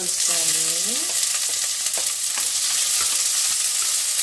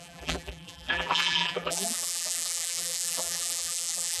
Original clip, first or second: first